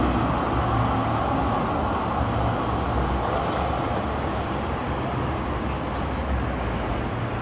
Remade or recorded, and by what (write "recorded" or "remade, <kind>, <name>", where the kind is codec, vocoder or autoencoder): recorded